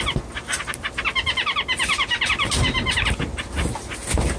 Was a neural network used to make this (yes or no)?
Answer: no